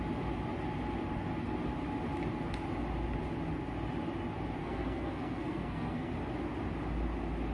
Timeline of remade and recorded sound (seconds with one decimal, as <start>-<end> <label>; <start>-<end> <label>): 0.0-4.6 recorded; 4.6-6.1 remade; 6.1-7.5 recorded